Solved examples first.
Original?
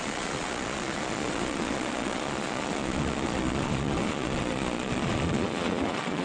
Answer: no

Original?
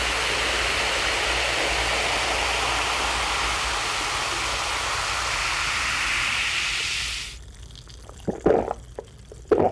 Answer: yes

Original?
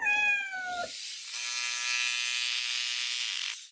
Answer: yes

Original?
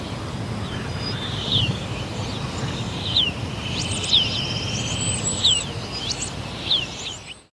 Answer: yes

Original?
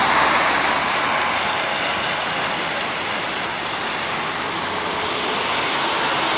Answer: yes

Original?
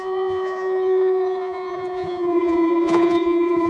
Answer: no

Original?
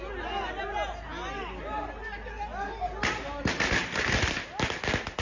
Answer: yes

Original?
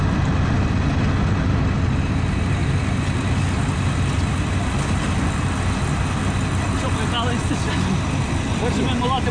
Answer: yes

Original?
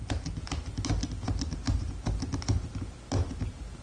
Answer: yes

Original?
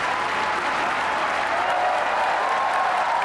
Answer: yes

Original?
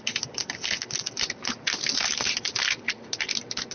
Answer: yes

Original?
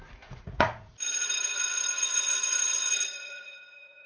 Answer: no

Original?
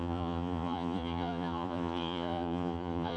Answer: no